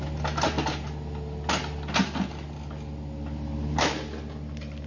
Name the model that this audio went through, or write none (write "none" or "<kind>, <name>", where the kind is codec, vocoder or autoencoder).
none